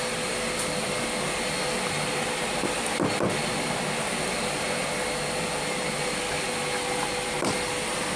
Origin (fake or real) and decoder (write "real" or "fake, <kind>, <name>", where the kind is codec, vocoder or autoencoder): real